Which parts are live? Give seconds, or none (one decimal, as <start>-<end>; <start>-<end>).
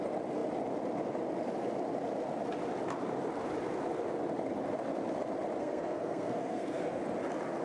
0.0-5.6; 7.0-7.6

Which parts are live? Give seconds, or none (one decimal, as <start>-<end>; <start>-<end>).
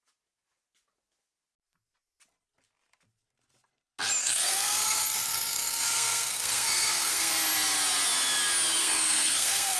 0.0-4.2; 7.3-8.8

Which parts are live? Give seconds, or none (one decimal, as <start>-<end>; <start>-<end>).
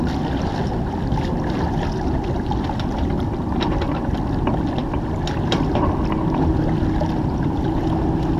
0.0-8.4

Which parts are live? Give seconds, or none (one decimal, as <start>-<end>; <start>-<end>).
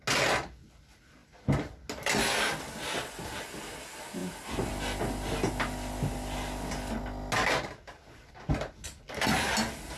0.0-10.0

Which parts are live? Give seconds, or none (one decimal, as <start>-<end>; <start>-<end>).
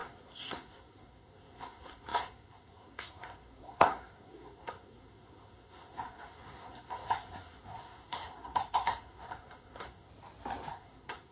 10.1-10.7